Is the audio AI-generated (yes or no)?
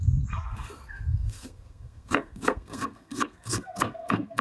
yes